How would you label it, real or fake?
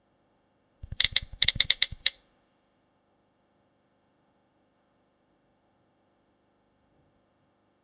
fake